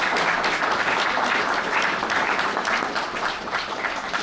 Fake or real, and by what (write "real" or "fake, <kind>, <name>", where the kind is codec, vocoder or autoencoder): real